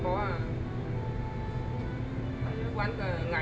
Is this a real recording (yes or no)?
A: yes